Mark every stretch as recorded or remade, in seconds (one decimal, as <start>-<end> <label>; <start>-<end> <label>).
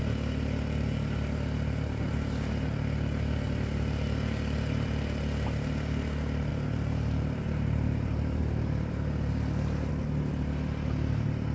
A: 0.0-6.5 recorded; 6.5-9.9 remade; 9.9-11.5 recorded